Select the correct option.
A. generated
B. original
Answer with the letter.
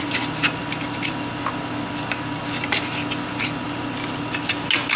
B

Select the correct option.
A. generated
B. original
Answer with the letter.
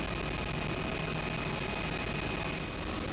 B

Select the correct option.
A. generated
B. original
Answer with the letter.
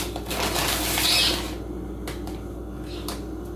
B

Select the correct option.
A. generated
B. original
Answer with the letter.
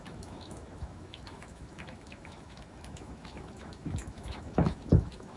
A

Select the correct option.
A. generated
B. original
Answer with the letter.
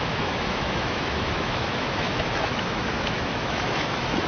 A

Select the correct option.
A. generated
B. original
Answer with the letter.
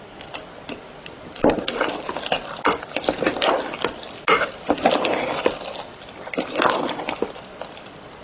B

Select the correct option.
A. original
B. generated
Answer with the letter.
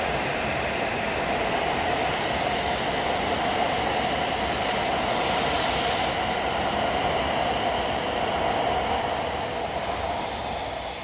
A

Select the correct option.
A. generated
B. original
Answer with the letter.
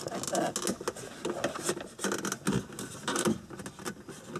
B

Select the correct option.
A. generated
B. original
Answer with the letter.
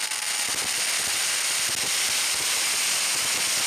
B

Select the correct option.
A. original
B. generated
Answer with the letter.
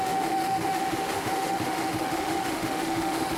B